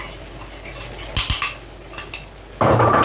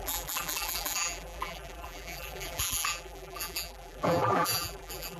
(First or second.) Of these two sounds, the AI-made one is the second